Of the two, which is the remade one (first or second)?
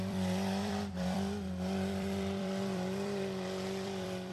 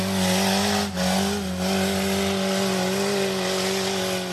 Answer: first